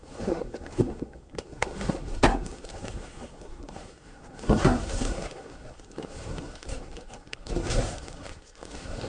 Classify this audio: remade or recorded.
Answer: remade